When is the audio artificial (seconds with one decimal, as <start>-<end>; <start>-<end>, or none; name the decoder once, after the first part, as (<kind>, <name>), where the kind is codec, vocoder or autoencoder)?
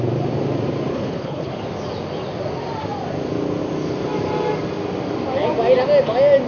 0.9-1.5 (codec, HILCodec)